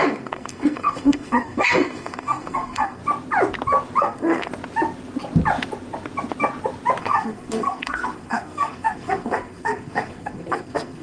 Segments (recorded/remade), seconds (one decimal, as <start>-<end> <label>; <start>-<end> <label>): 0.0-3.0 remade; 3.0-4.0 recorded; 4.0-4.5 remade; 4.5-7.0 recorded; 7.0-11.0 remade